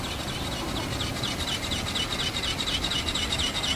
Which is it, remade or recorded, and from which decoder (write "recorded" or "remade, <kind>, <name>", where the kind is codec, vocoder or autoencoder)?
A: recorded